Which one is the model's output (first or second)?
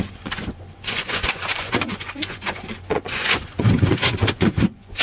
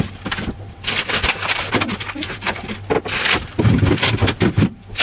first